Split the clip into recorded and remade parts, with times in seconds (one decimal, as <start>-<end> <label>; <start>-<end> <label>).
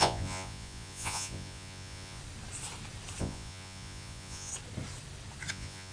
0.0-2.2 remade; 2.2-3.2 recorded; 3.2-4.5 remade; 4.5-5.5 recorded; 5.5-5.9 remade